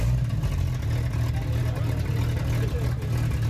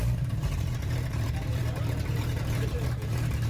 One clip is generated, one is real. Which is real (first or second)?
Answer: first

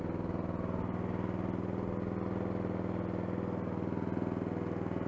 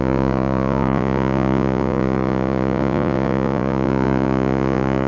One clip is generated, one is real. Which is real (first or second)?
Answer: first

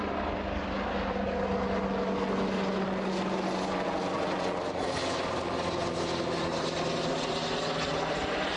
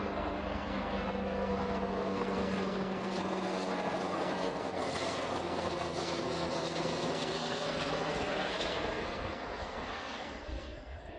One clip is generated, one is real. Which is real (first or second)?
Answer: first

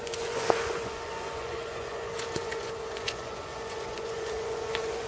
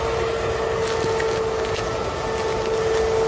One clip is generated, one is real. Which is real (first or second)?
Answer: second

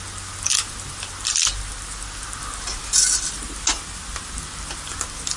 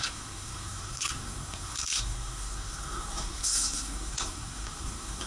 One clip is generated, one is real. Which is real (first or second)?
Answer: first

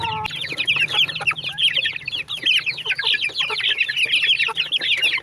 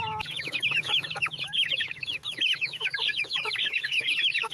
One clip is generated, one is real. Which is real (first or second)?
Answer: first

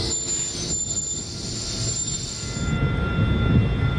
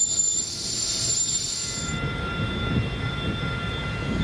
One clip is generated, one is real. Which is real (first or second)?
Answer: first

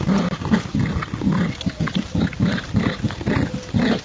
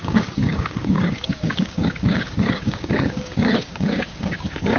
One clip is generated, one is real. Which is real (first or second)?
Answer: first